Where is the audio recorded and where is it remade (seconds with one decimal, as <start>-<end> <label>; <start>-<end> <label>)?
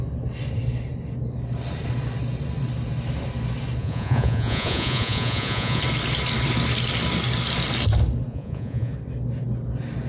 0.0-3.8 recorded; 3.8-5.8 remade; 5.8-8.3 recorded; 8.3-8.9 remade; 8.9-10.1 recorded